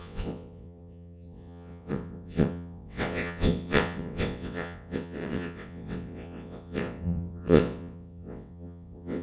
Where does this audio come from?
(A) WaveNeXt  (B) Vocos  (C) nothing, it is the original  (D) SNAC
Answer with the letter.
A